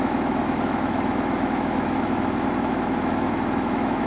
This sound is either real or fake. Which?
fake